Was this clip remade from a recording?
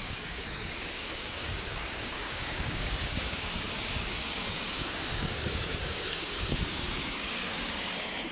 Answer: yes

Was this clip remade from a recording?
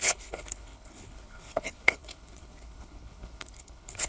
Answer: yes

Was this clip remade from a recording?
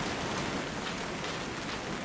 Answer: no